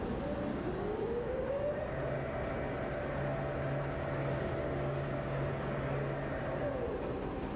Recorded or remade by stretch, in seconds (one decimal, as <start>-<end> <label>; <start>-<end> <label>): 0.0-0.5 recorded; 0.5-1.8 remade; 1.8-4.6 recorded; 4.6-6.2 remade; 6.2-7.6 recorded